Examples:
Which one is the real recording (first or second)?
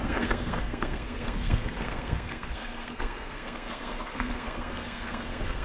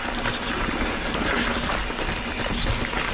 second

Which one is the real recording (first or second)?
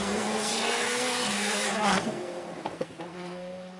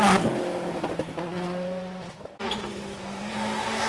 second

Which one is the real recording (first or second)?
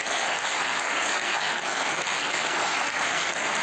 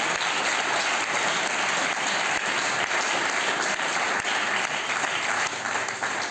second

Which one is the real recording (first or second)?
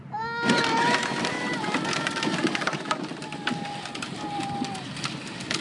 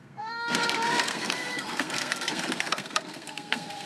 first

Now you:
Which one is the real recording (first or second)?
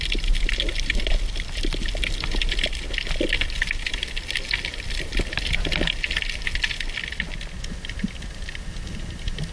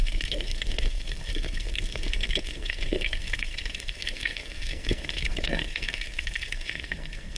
first